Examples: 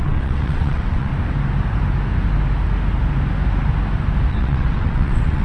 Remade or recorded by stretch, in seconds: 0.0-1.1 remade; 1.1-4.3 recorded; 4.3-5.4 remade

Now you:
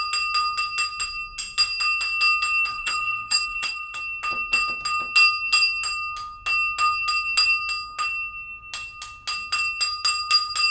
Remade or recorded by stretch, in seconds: 0.0-2.7 recorded; 2.7-4.0 remade; 4.0-10.7 recorded

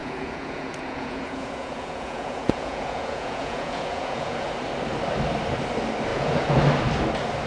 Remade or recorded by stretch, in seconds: 0.0-4.5 remade; 4.5-6.1 recorded; 6.1-6.6 remade; 6.6-7.5 recorded

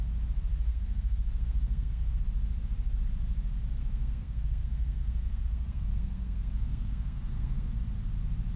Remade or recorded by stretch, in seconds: 0.0-0.7 recorded; 0.7-2.2 remade; 2.2-3.8 recorded; 3.8-7.8 remade; 7.8-8.6 recorded

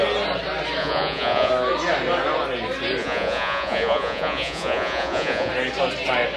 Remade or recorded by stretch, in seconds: 0.0-0.8 recorded; 0.8-1.5 remade; 1.5-3.0 recorded; 3.0-5.5 remade; 5.5-6.4 recorded

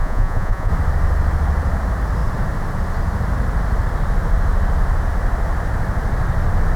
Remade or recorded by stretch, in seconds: 0.0-0.7 remade; 0.7-6.8 recorded

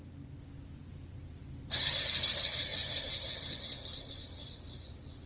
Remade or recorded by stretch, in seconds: 0.0-0.8 recorded; 0.8-1.9 remade; 1.9-2.7 recorded; 2.7-3.3 remade; 3.3-5.3 recorded